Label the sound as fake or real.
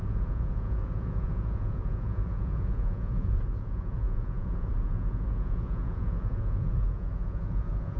fake